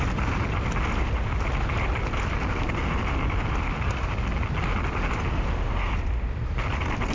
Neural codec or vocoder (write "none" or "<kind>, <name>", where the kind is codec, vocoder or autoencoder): none